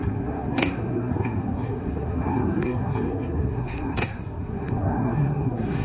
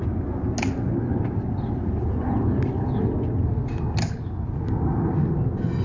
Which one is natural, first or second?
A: second